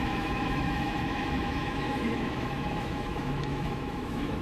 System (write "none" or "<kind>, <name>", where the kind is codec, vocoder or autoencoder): autoencoder, DAC-VAE